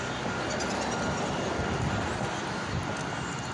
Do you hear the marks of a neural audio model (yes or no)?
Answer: no